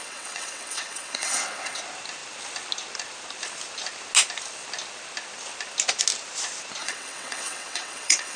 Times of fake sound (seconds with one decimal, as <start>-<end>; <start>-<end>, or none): 0.0-1.8; 6.8-8.4